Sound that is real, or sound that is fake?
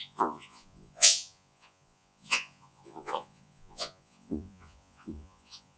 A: fake